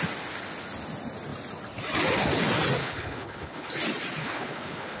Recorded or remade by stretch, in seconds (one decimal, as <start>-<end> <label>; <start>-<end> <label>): 0.0-2.8 recorded; 2.8-3.7 remade; 3.7-4.2 recorded; 4.2-5.0 remade